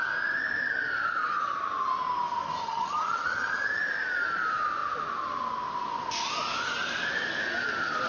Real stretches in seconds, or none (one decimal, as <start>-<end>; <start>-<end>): 0.0-2.6; 3.8-8.1